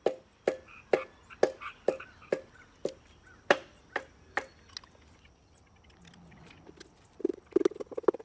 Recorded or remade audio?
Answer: recorded